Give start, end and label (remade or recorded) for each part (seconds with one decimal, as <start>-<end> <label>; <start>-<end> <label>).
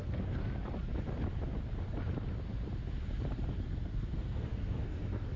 0.0-0.4 remade; 0.4-3.6 recorded; 3.6-5.4 remade